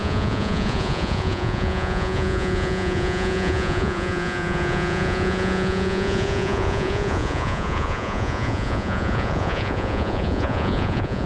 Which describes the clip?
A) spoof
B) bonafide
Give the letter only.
A